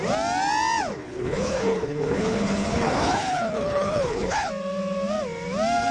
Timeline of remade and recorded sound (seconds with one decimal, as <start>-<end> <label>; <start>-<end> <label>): 0.0-1.0 recorded; 1.0-4.5 remade; 4.5-5.9 recorded